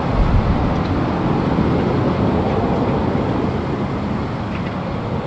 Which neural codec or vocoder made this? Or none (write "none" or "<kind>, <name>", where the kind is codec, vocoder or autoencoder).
none